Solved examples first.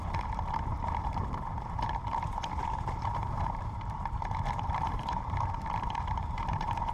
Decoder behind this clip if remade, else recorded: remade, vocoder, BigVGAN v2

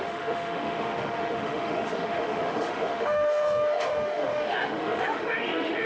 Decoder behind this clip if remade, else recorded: remade, autoencoder, DAC-VAE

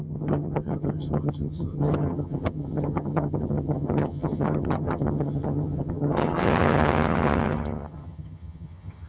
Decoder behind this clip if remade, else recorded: remade, vocoder, HiFi-GAN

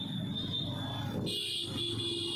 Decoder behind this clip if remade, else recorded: recorded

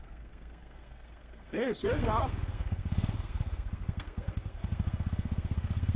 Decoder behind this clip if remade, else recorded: remade, codec, SNAC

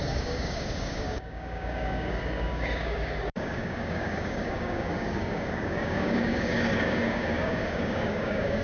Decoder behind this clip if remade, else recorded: remade, codec, DAC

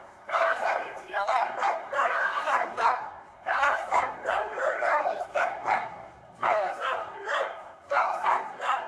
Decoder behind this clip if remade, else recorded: remade, codec, SNAC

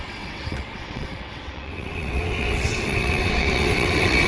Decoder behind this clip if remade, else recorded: remade, vocoder, WaveNeXt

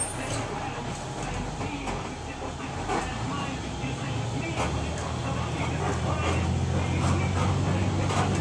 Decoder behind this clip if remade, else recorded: recorded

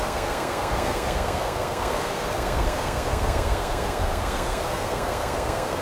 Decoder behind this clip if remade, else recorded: remade, codec, SNAC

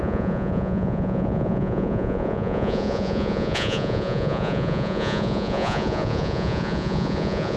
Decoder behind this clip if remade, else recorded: remade, vocoder, Vocos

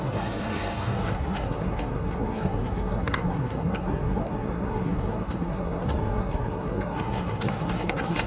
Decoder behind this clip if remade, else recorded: remade, codec, SNAC